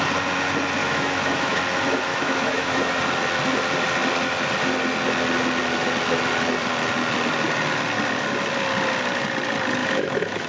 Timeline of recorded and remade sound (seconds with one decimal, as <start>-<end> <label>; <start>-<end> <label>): 0.0-0.8 recorded; 0.8-1.6 remade; 1.6-2.1 recorded; 2.1-3.0 remade; 3.0-9.8 recorded; 9.8-10.5 remade

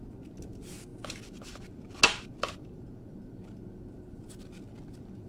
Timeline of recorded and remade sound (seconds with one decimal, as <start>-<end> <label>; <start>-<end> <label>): 0.0-5.3 recorded

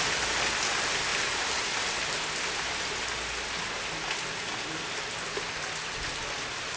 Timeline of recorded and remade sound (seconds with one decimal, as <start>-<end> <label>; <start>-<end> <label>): 0.0-6.8 recorded

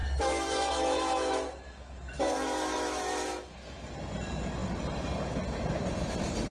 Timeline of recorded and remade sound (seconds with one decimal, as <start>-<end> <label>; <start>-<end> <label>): 0.0-3.9 remade; 3.9-6.5 recorded

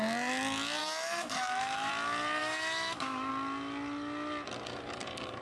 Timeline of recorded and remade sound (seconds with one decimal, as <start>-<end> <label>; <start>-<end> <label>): 0.0-0.8 recorded; 0.8-1.9 remade; 1.9-2.4 recorded; 2.4-3.3 remade; 3.3-5.4 recorded